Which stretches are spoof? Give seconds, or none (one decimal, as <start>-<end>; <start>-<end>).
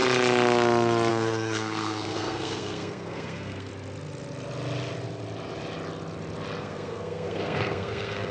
1.1-3.7; 6.6-8.3